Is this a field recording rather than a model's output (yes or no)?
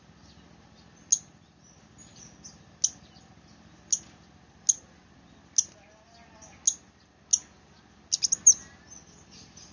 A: yes